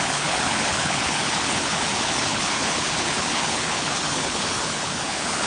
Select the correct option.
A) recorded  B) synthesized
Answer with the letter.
B